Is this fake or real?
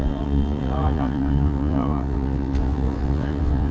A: fake